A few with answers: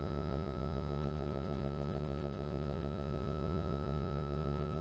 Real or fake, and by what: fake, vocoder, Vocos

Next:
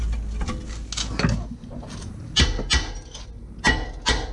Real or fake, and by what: real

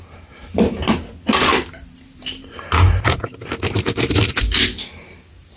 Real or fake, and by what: real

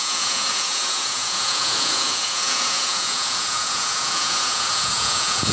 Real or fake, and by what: fake, vocoder, Vocos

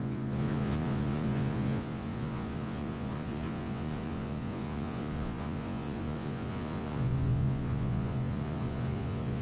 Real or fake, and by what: fake, vocoder, Vocos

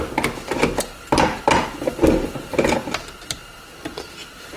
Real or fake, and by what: real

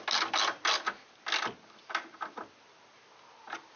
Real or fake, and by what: real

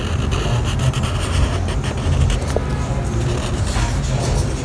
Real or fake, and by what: real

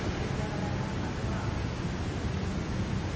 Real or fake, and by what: real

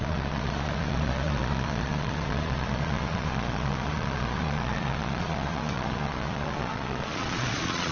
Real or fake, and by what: fake, vocoder, Vocos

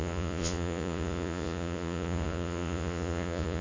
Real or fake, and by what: fake, vocoder, Vocos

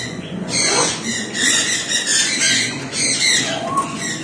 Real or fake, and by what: fake, vocoder, Vocos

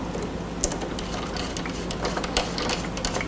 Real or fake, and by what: real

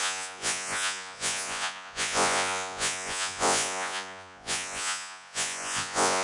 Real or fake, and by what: fake, vocoder, Vocos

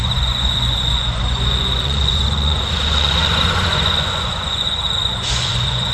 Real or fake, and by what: fake, vocoder, Vocos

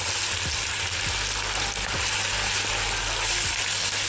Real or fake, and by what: real